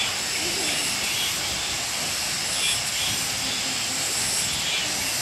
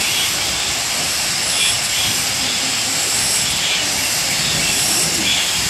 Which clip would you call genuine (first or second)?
first